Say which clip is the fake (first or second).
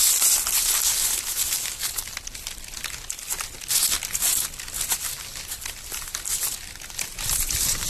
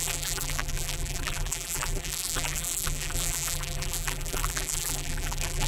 second